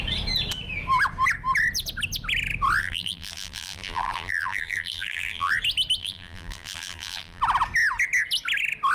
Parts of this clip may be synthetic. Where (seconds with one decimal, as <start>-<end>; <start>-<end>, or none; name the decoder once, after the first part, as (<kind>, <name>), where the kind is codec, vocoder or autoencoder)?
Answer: 2.8-5.5 (vocoder, BigVGAN v2); 6.0-7.4